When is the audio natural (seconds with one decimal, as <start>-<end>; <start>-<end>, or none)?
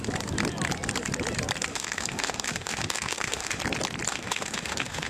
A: 0.0-1.7; 3.6-4.1